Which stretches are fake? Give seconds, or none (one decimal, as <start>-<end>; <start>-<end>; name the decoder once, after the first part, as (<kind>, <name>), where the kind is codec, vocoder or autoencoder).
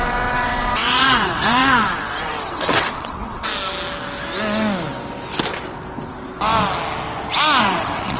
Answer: 0.0-3.5 (vocoder, WaveNeXt); 7.6-8.2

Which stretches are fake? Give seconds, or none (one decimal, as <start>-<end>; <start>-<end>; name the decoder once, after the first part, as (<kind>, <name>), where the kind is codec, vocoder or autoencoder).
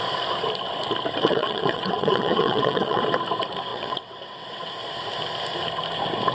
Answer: 1.2-3.0 (vocoder, WaveNeXt); 3.7-4.7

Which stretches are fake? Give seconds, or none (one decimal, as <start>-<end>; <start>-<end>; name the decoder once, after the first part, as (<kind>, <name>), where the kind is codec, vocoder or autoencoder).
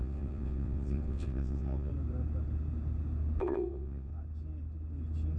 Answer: 0.0-1.9 (vocoder, WaveNeXt); 3.4-4.1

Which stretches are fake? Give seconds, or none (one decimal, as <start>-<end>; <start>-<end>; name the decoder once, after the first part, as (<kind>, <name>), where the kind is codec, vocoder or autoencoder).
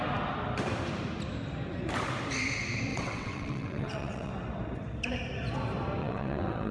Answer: 2.9-4.3 (vocoder, WaveNeXt); 6.0-6.7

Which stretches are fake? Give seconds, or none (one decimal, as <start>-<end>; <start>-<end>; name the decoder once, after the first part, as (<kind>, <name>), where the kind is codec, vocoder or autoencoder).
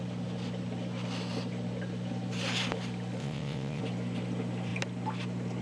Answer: 3.2-3.8 (vocoder, WaveNeXt)